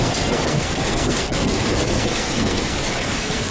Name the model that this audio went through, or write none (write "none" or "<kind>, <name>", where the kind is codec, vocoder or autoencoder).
codec, SNAC